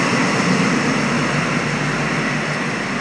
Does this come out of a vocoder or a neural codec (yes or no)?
no